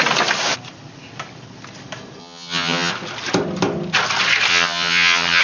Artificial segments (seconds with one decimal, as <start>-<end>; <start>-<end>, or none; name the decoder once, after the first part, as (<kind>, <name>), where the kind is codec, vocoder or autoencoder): 2.2-2.9 (vocoder, HiFi-GAN); 4.5-5.4